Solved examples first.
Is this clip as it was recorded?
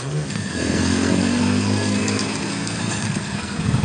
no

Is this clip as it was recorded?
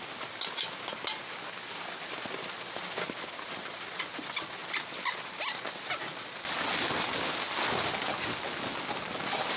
yes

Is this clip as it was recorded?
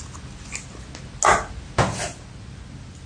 yes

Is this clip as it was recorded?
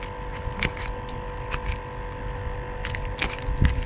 yes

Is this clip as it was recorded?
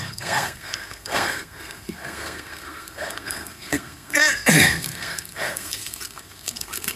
no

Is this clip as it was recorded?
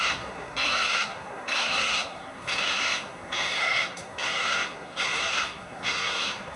no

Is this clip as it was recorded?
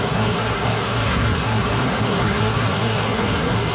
no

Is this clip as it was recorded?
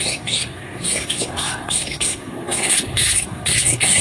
no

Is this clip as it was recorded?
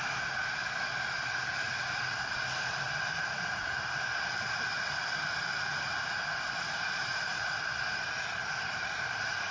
yes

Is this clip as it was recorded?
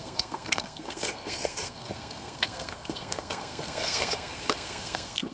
no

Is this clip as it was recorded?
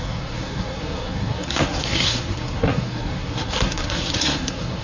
no